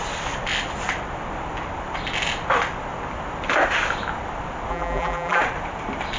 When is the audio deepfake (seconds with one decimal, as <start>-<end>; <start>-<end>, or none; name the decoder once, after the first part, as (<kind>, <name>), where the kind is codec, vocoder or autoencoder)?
4.7-5.4 (vocoder, BigVGAN v2)